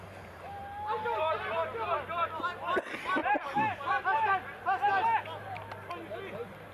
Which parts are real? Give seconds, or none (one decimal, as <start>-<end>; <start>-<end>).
0.0-6.7